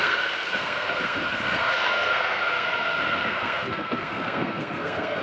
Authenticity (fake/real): fake